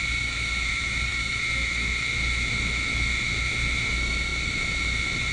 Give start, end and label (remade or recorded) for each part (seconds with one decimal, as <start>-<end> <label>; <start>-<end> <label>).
0.0-5.3 remade